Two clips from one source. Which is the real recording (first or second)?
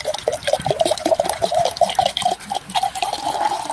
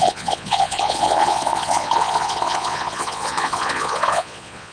first